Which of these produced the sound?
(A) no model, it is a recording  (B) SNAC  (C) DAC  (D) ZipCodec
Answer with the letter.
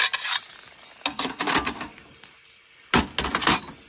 A